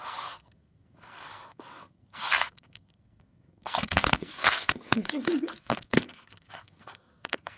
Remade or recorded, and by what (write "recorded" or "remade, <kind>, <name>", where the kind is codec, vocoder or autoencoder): remade, codec, SNAC